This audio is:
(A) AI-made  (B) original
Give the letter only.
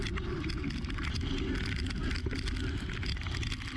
B